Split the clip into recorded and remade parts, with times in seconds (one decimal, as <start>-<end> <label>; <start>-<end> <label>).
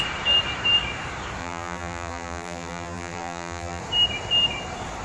0.0-1.4 recorded; 1.4-3.8 remade; 3.8-5.0 recorded